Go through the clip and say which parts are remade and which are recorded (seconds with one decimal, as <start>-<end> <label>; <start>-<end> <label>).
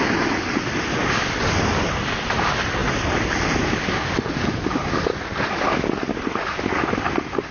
0.0-7.5 recorded